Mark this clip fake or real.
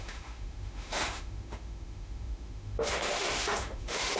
fake